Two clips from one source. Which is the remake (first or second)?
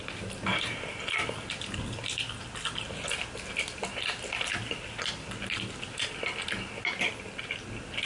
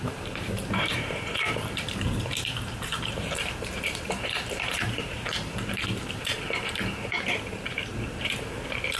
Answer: second